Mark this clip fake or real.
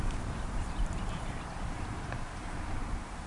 fake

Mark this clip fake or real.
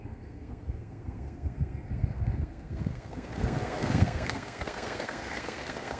fake